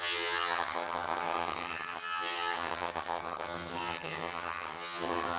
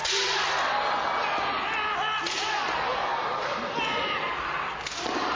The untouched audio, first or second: second